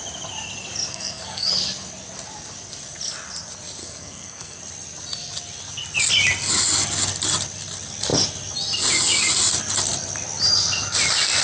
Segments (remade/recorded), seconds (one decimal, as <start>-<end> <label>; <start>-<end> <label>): 0.0-0.9 recorded; 0.9-1.5 remade; 1.5-3.8 recorded; 3.8-4.6 remade; 4.6-11.4 recorded